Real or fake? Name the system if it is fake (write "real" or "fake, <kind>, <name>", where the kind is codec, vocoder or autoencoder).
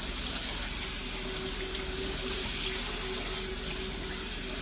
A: real